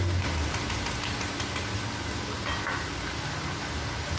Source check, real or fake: real